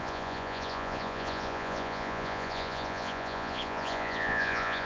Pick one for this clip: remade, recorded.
remade